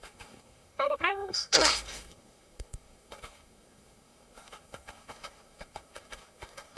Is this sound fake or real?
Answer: fake